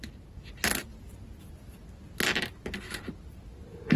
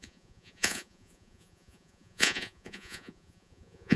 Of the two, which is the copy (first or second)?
second